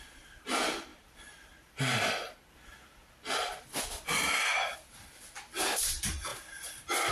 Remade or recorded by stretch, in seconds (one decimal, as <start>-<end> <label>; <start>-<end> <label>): 0.0-0.9 recorded; 0.9-5.2 remade; 5.2-6.3 recorded; 6.3-7.1 remade